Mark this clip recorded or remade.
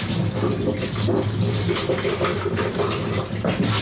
recorded